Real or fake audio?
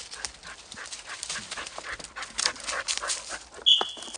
real